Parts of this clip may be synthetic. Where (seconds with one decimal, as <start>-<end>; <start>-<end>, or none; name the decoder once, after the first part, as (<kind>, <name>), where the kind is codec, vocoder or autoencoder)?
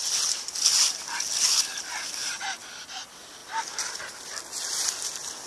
0.0-0.6 (vocoder, BigVGAN v2)